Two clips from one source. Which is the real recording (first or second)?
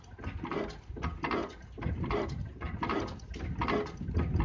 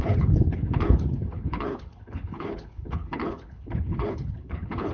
first